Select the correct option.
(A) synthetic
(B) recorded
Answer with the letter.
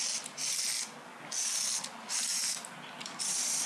B